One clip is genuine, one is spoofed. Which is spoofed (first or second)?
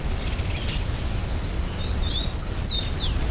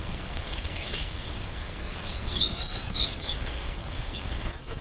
second